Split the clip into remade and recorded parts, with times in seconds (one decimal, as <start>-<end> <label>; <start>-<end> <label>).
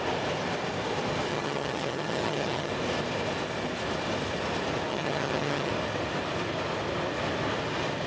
0.0-1.3 recorded; 1.3-2.7 remade; 2.7-4.9 recorded; 4.9-5.7 remade; 5.7-8.1 recorded